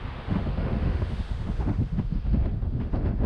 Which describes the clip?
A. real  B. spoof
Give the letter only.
B